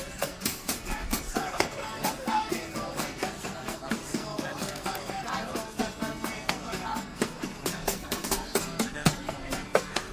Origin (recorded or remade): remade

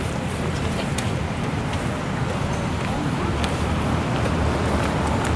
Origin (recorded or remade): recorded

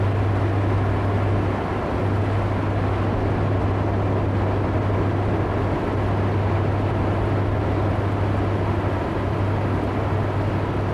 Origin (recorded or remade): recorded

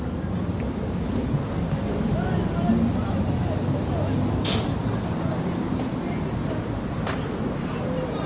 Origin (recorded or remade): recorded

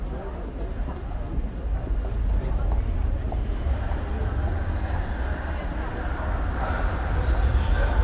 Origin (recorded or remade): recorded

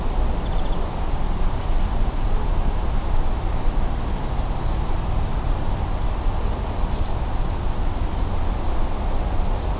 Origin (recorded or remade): recorded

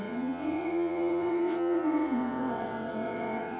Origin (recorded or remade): remade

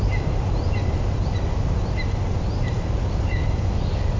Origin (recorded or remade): recorded